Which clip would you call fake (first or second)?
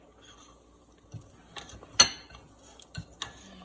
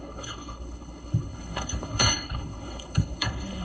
second